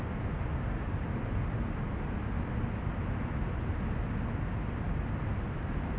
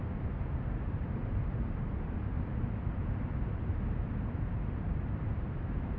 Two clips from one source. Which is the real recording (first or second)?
first